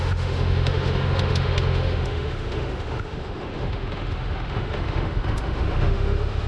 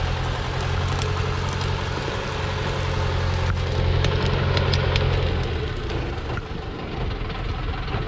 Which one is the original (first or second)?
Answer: second